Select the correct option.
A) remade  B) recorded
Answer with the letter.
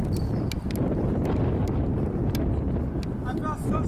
B